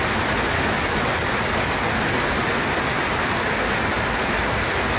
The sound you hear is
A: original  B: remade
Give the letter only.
A